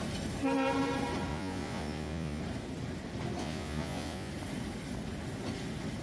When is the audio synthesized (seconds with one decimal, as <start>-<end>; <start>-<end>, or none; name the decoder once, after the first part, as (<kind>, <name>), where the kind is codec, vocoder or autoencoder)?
1.3-2.4 (vocoder, Vocos); 3.4-4.3